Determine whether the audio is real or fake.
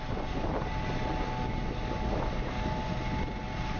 real